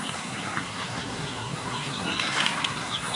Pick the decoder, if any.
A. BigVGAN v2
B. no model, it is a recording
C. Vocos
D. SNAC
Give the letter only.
D